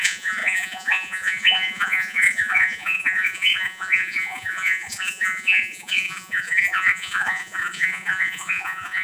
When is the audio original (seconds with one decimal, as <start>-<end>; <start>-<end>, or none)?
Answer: none